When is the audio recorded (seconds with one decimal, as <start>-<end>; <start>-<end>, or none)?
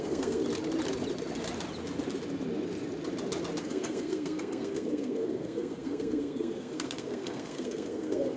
0.4-3.6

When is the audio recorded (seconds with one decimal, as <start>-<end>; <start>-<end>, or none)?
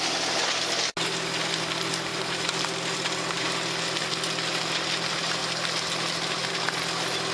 0.0-7.3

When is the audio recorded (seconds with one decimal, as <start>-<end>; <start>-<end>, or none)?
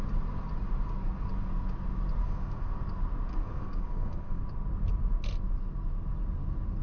0.0-2.2; 2.7-3.3; 4.4-6.8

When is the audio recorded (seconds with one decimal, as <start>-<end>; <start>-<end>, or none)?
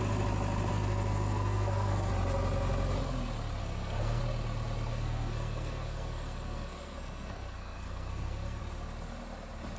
0.0-0.7; 2.1-3.6; 4.2-4.9; 8.6-9.8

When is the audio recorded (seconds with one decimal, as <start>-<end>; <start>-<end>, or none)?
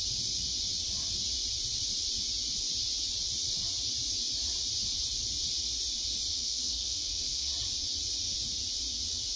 0.0-6.3; 7.5-9.4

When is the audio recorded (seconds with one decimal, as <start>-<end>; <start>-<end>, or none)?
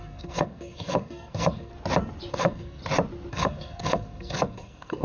1.7-2.3; 2.8-3.3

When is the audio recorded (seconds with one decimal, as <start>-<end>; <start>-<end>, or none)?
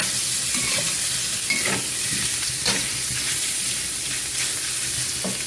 0.0-5.5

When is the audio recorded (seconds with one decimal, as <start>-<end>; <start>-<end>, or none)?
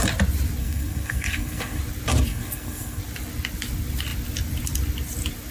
0.0-0.6; 1.8-2.3; 3.0-5.5